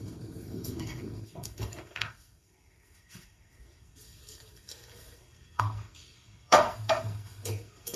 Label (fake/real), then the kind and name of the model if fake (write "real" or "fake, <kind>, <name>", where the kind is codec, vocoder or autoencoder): fake, codec, SNAC